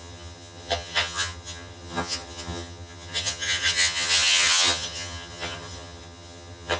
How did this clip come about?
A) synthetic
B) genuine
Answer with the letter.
A